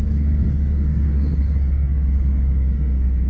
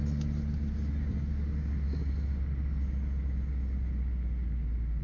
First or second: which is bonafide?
second